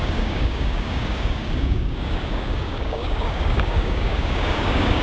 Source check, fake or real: fake